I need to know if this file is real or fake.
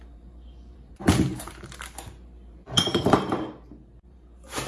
fake